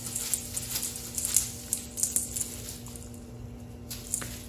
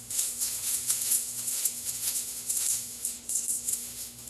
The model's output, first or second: second